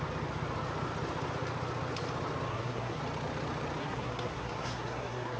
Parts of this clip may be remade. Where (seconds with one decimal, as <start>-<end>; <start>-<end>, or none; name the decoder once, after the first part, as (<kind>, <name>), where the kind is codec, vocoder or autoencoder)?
2.5-3.0 (codec, SNAC); 3.8-5.4